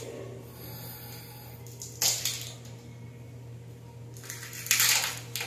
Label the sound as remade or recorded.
recorded